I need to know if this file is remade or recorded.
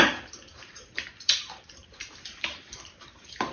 remade